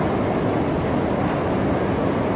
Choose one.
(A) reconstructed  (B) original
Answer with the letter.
B